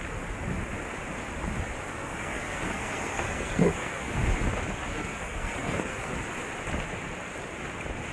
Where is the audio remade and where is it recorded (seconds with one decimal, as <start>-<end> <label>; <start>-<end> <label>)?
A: 0.0-1.9 recorded; 1.9-4.3 remade; 4.3-4.9 recorded; 4.9-6.1 remade; 6.1-8.1 recorded